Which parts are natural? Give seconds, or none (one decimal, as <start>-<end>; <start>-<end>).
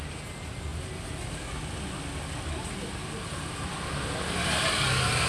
0.0-5.3